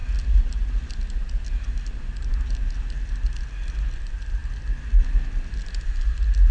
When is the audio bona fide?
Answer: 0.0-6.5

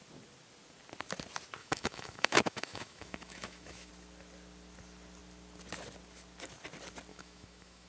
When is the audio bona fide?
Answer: 0.0-1.6; 3.9-7.1

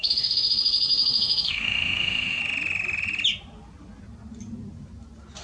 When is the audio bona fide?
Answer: 2.4-5.4

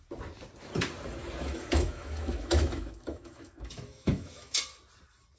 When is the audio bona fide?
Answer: 0.0-1.4; 4.6-5.4

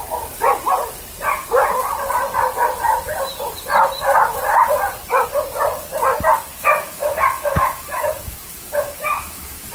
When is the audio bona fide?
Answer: 0.0-6.5

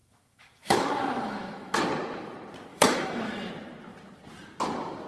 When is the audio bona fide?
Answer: 1.8-2.7; 3.5-5.1